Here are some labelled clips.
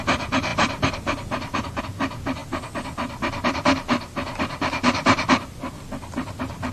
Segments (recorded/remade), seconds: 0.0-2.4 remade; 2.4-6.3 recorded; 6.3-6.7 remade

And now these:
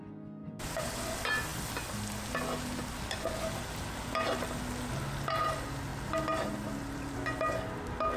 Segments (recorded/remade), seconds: 0.0-0.4 recorded; 0.4-0.9 remade; 0.9-8.2 recorded

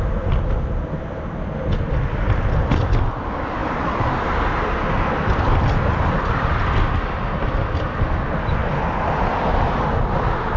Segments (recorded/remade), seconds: 0.0-10.6 recorded

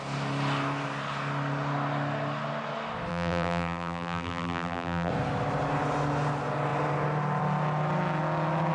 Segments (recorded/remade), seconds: 0.0-3.1 recorded; 3.1-5.1 remade; 5.1-8.7 recorded